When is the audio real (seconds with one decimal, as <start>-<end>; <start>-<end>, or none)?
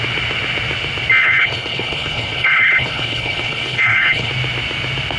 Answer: 0.0-1.2; 4.3-5.2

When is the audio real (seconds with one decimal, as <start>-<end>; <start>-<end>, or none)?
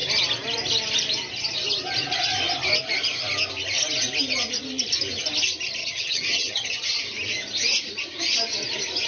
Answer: 0.0-5.8; 7.0-9.1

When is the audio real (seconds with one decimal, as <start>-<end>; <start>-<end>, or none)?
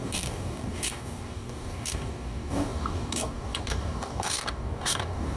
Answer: none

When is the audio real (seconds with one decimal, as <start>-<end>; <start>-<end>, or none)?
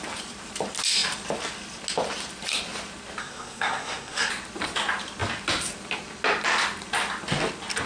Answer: 0.0-3.2; 4.3-7.9